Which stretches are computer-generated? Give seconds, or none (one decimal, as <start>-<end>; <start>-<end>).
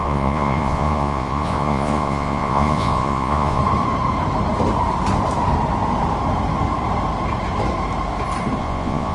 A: 0.0-3.6; 8.6-9.1